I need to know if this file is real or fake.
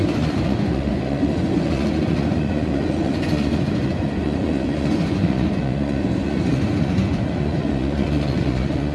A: fake